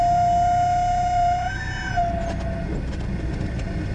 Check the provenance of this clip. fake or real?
real